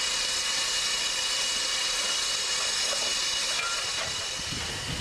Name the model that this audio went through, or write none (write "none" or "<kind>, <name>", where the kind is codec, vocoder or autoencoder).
none